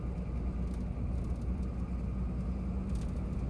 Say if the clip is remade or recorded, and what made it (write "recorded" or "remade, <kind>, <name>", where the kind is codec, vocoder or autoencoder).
recorded